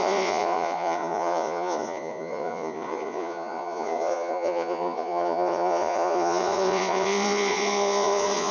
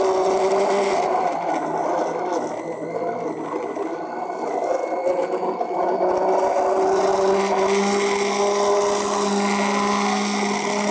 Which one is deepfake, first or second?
first